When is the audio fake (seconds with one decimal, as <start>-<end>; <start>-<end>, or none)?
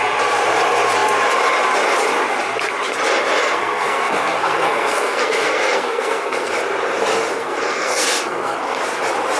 3.4-6.5; 7.3-8.8